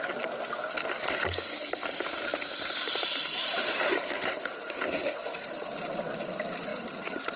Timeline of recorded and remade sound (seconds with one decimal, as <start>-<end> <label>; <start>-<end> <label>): 0.0-2.3 recorded; 2.3-5.5 remade; 5.5-6.7 recorded; 6.7-7.4 remade